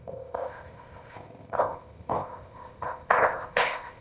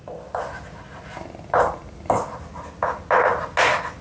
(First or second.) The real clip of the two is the second